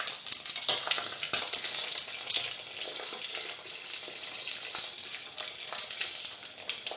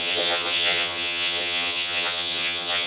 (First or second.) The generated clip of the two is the second